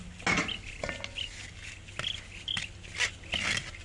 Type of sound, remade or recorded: recorded